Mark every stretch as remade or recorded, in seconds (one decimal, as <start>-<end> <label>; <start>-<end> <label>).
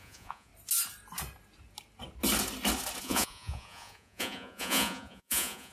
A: 0.0-0.5 remade; 0.5-3.0 recorded; 3.0-5.7 remade